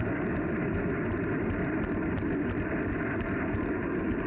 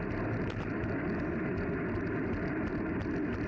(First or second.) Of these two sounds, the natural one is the second